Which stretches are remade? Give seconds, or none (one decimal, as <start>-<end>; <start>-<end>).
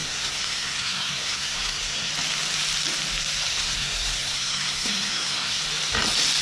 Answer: 0.0-2.1; 3.5-5.6